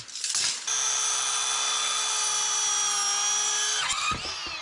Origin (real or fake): real